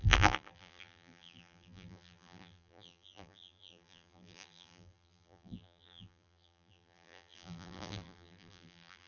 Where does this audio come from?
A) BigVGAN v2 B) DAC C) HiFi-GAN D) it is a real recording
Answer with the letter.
A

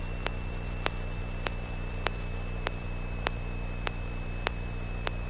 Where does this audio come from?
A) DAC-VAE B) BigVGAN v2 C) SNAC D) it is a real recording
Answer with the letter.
B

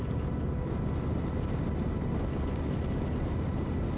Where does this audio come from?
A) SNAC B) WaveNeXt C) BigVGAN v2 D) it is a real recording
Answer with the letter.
D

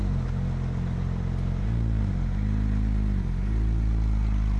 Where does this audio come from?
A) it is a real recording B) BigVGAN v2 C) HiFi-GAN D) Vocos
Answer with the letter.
A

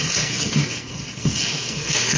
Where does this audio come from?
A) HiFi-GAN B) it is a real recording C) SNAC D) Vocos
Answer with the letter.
C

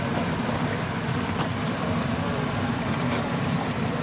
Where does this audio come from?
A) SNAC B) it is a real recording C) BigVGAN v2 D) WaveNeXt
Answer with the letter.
C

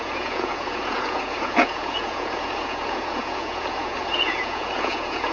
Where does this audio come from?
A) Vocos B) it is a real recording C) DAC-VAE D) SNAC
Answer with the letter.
A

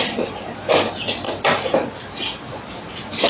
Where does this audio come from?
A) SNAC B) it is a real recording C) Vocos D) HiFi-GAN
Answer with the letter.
B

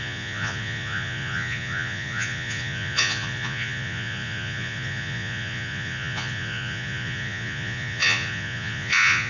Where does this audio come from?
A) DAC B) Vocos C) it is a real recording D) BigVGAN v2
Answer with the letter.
B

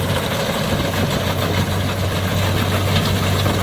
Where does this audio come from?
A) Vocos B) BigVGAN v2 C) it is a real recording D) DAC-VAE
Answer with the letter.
C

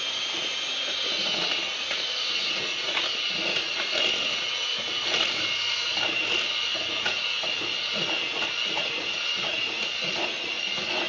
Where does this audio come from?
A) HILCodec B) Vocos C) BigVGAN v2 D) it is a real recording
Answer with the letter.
B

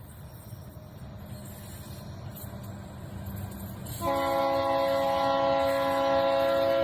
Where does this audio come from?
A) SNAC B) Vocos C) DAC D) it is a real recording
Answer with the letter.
D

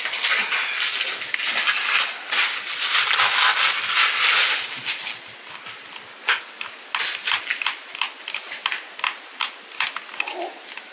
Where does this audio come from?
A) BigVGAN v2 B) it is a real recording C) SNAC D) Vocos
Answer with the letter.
B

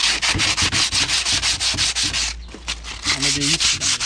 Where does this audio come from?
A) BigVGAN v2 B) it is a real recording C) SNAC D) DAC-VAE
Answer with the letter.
B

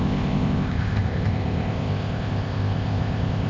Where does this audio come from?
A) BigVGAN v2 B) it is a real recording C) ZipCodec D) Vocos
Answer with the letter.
C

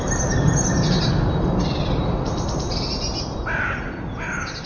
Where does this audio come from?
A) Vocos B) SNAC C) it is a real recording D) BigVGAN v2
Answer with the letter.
C